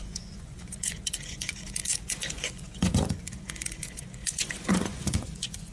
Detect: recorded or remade remade